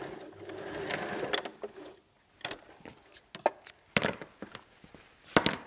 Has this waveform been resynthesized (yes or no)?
no